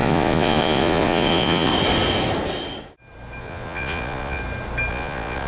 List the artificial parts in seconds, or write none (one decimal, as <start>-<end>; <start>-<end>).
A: 0.0-1.7; 3.4-4.4; 4.9-5.5